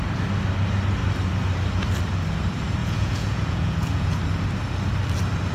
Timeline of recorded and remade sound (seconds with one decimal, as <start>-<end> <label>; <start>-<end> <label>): 0.0-2.8 recorded; 2.8-4.2 remade; 4.2-5.5 recorded